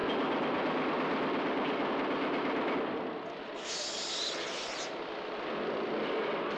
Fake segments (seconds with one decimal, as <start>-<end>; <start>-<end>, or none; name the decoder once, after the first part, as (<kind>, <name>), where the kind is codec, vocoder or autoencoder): none